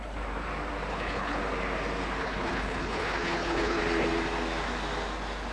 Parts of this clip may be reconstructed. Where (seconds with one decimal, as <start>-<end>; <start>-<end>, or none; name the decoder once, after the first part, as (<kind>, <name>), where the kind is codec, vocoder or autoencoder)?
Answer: 0.9-1.4 (codec, HILCodec); 2.2-3.8